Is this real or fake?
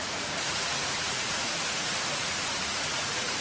fake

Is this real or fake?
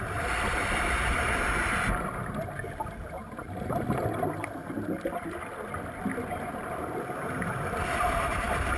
real